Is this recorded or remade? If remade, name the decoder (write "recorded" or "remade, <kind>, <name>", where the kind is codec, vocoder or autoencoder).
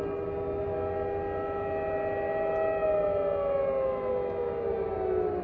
recorded